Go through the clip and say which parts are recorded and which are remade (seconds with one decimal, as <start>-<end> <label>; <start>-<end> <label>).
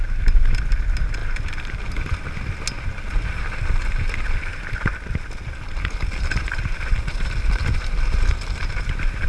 0.0-9.3 recorded